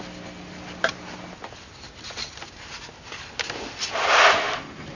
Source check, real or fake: real